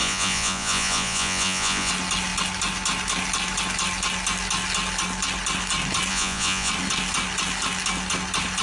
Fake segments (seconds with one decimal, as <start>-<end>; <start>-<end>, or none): 0.0-1.9; 6.1-6.7